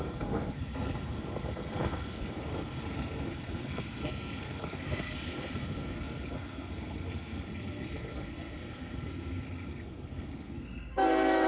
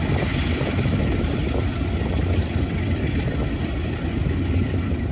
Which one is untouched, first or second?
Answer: second